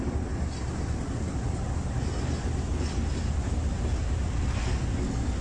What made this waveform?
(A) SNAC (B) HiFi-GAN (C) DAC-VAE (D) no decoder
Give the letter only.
D